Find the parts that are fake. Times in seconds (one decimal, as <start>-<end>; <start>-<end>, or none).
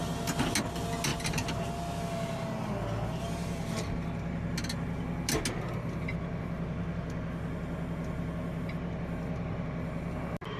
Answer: none